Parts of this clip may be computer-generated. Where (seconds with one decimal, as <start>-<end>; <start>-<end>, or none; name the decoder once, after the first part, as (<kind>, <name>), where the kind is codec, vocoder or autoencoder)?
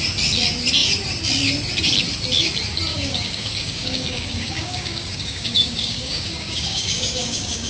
2.9-7.7 (codec, DAC)